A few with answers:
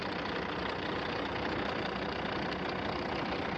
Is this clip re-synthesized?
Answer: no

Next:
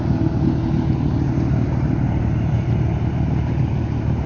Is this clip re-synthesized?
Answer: no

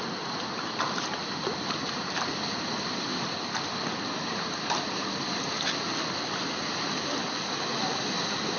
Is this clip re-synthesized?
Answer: no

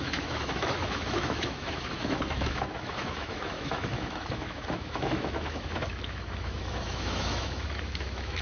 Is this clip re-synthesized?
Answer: yes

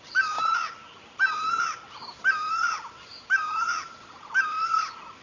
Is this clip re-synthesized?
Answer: no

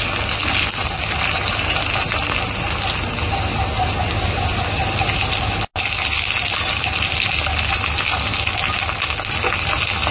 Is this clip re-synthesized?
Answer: no